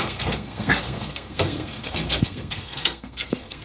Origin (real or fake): fake